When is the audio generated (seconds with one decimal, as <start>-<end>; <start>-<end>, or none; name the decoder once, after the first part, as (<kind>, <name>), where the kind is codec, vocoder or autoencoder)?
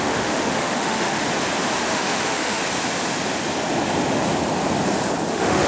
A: 0.0-1.2 (autoencoder, DAC-VAE); 1.9-2.6; 5.3-5.7